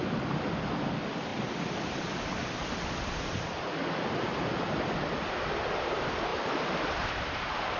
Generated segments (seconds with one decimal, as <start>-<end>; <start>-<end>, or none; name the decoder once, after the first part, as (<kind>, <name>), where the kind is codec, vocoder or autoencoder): 1.3-1.8 (vocoder, BigVGAN v2); 6.3-7.8